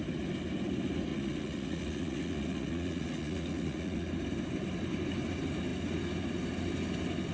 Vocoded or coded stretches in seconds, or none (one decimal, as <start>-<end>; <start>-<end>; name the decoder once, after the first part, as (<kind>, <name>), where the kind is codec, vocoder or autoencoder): 1.1-4.1 (vocoder, Vocos)